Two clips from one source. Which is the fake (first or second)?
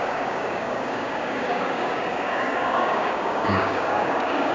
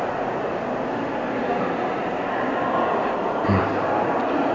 first